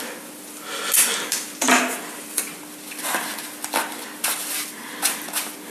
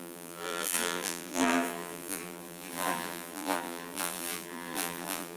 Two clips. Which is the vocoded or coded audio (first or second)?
second